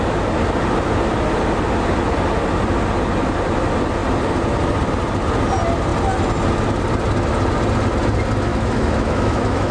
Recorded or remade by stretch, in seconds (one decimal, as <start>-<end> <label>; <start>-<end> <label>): 0.0-8.5 recorded; 8.5-9.7 remade